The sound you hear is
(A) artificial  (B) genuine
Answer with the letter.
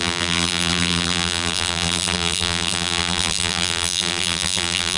A